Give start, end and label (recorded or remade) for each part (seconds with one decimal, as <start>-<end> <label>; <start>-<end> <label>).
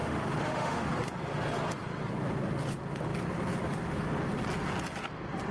0.0-0.9 remade; 0.9-5.5 recorded